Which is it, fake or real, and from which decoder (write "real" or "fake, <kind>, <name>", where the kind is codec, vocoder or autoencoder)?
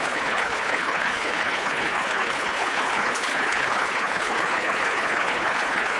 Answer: fake, codec, HILCodec